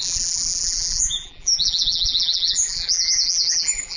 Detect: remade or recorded remade